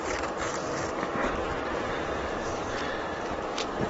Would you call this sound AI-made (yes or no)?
yes